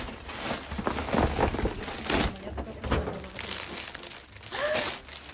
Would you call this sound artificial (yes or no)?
no